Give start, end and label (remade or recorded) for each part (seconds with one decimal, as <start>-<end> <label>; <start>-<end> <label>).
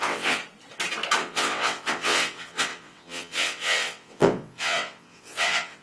0.0-0.4 remade; 0.4-1.2 recorded; 1.2-5.8 remade